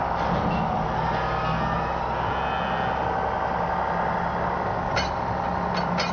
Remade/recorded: recorded